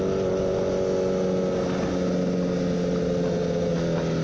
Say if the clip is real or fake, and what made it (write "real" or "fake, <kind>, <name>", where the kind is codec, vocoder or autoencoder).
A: real